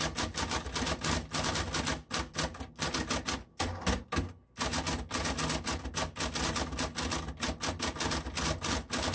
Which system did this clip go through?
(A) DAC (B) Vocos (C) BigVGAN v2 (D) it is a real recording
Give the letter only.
D